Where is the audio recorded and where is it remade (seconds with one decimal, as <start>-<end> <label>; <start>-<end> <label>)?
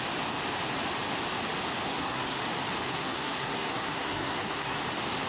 0.0-1.9 recorded; 1.9-2.4 remade; 2.4-2.9 recorded; 2.9-4.8 remade; 4.8-5.3 recorded